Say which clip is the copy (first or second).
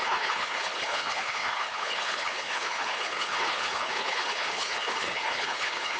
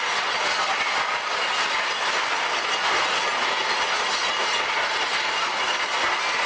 first